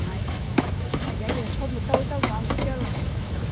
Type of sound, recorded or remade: remade